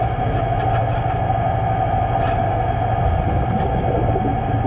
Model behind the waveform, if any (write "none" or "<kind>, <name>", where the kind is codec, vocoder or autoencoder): none